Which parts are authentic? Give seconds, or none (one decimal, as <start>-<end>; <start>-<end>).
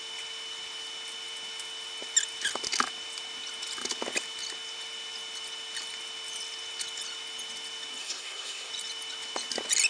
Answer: 0.0-8.0; 8.7-9.9